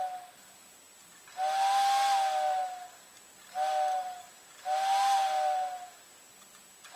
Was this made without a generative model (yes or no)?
yes